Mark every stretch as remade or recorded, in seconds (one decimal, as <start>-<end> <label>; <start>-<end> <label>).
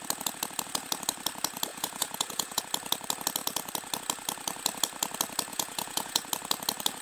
0.0-1.7 recorded; 1.7-2.6 remade; 2.6-5.5 recorded; 5.5-6.3 remade; 6.3-7.0 recorded